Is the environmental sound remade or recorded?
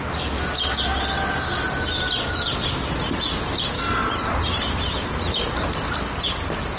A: recorded